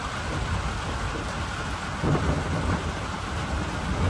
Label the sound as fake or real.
real